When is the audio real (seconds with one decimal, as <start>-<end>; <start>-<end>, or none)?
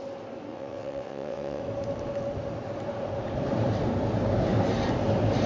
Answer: 0.0-0.5; 1.6-5.5